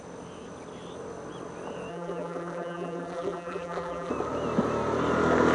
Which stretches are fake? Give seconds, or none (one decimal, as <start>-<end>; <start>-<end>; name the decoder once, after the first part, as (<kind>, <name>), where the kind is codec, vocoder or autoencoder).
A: 1.9-4.1 (vocoder, BigVGAN v2)